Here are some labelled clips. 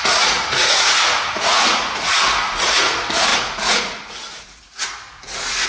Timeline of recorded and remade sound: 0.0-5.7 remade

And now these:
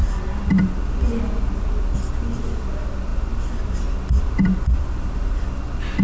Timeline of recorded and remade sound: 0.0-6.0 recorded

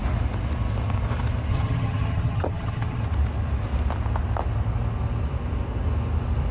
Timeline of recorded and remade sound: 0.0-1.5 recorded; 1.5-3.0 remade; 3.0-6.5 recorded

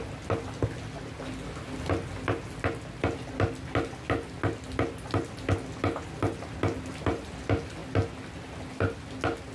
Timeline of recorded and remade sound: 0.0-9.5 recorded

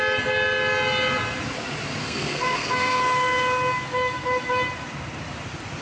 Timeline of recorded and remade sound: 0.0-2.0 recorded; 2.0-3.0 remade; 3.0-5.8 recorded

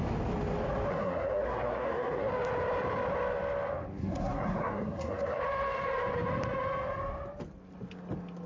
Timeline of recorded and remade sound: 0.0-0.9 recorded; 0.9-2.3 remade; 2.3-4.0 recorded; 4.0-5.4 remade; 5.4-8.5 recorded

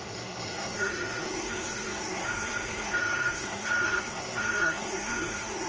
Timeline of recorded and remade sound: 0.0-5.7 remade